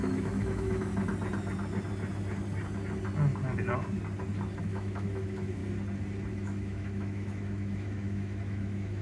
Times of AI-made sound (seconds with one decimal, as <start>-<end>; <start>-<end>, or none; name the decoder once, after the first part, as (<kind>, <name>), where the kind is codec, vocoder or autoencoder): 0.0-0.9 (autoencoder, DAC-VAE); 4.6-5.6; 6.3-9.0